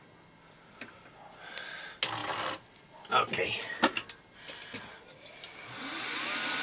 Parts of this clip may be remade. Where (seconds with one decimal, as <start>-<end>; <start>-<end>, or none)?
none